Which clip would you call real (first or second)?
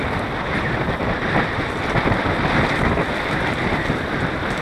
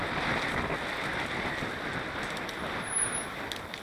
second